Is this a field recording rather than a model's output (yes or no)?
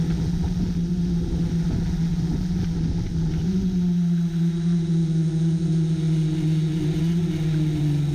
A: yes